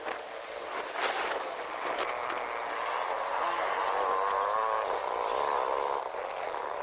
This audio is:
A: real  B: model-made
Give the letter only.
A